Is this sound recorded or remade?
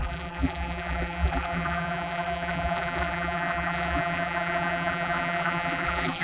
remade